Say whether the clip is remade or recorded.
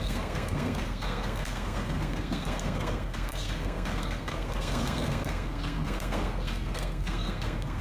remade